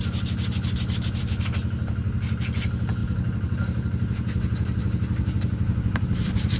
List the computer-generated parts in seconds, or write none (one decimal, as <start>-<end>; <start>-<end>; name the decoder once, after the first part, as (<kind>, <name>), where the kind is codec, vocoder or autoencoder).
3.0-6.6 (vocoder, BigVGAN v2)